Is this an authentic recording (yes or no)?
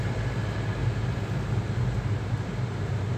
yes